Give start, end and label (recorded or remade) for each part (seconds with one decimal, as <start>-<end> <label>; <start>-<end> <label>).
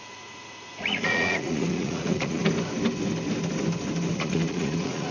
0.0-2.4 remade; 2.4-4.1 recorded; 4.1-5.1 remade